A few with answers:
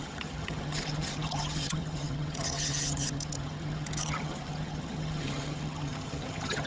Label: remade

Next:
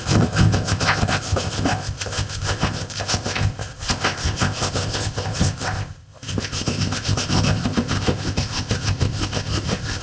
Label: remade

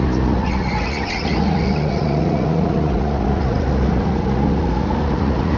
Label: remade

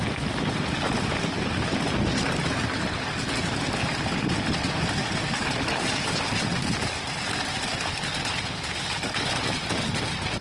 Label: recorded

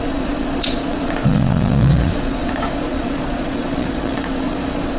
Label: remade